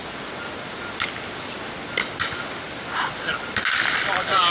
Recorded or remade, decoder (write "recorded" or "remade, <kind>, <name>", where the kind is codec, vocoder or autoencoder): recorded